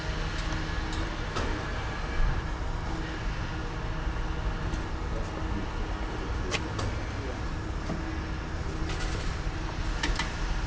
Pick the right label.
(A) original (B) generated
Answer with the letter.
A